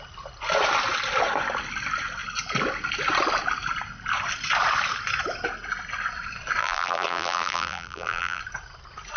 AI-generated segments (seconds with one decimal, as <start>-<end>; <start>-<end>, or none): 6.6-8.4